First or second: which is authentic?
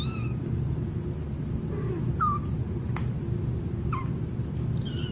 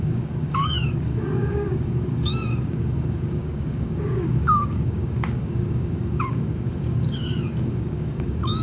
first